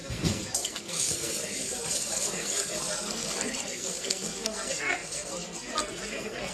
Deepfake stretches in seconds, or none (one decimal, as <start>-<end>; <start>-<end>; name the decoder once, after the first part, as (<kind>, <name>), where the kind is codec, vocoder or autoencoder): 0.0-6.5 (codec, SNAC)